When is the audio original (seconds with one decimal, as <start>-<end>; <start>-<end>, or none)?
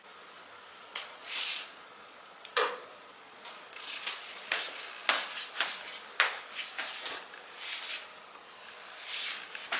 0.0-0.7; 4.6-9.8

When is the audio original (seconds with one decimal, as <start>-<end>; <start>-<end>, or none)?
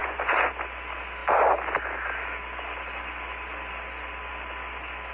0.5-5.1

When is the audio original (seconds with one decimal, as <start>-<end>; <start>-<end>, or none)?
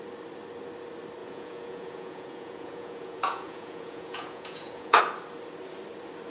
0.0-1.2; 5.0-6.3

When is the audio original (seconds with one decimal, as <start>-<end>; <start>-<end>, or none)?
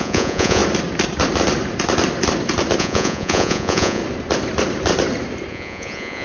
0.6-2.8; 4.0-5.5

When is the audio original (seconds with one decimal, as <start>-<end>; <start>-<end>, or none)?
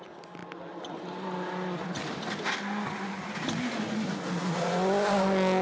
0.0-5.6